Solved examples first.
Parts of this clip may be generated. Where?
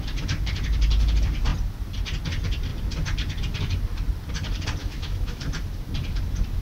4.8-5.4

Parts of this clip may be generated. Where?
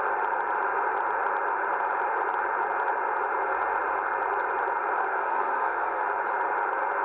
5.0-6.0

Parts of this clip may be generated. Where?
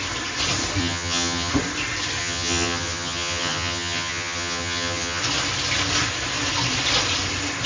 0.8-1.5; 2.2-5.2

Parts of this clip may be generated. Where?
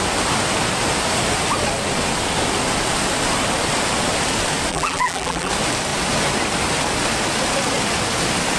4.7-5.5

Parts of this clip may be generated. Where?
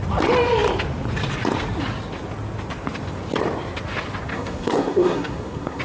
4.3-5.8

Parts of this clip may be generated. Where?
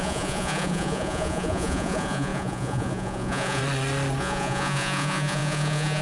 0.0-3.6; 4.2-6.0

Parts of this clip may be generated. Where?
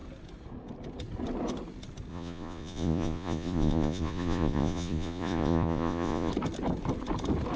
2.1-6.3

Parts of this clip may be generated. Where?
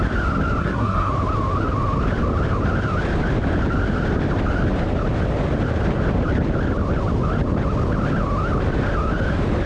0.6-1.1